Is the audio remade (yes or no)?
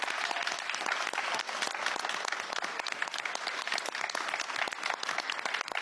no